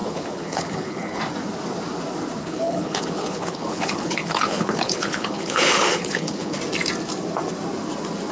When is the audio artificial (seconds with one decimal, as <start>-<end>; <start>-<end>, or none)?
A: 0.0-1.2; 2.4-6.6